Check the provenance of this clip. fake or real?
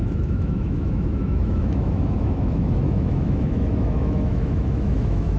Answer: fake